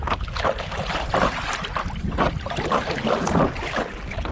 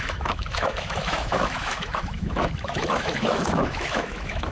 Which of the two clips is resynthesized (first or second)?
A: second